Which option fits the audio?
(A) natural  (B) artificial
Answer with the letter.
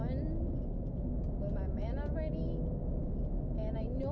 A